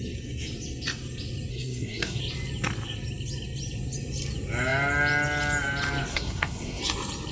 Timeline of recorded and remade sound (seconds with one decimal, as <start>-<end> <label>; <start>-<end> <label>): 0.0-1.5 recorded; 1.5-2.2 remade; 2.2-6.1 recorded; 6.1-6.8 remade; 6.8-7.3 recorded